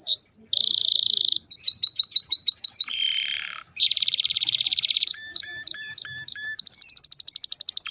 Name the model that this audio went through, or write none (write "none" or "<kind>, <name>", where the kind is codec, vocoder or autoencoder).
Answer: vocoder, BigVGAN v2